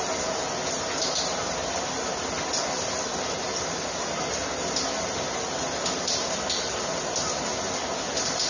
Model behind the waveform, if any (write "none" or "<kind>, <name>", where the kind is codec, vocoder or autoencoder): none